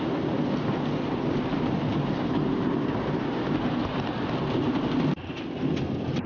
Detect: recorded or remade recorded